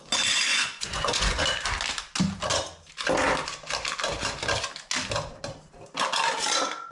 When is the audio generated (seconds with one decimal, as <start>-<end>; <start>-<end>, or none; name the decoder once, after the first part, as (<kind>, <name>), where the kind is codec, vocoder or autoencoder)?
0.5-1.4 (vocoder, Vocos)